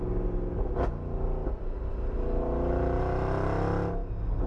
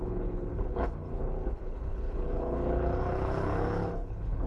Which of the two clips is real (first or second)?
first